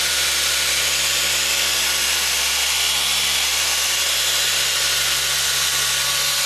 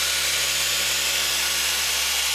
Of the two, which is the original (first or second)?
second